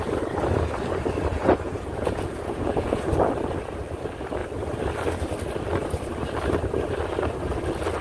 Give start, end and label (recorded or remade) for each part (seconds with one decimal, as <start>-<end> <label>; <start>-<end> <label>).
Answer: 0.0-1.3 recorded; 1.3-3.1 remade; 3.1-8.0 recorded